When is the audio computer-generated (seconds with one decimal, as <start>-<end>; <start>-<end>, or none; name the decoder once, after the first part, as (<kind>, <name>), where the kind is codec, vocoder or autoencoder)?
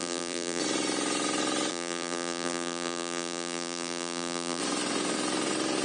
0.0-0.6 (vocoder, BigVGAN v2); 1.7-4.6